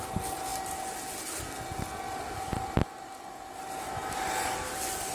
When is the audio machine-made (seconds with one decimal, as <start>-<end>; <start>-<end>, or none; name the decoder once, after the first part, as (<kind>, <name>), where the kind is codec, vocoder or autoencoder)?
none